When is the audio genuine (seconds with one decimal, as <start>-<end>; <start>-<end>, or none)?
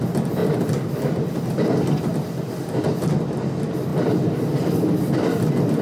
0.0-5.8